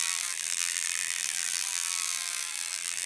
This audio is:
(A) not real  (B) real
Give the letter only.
A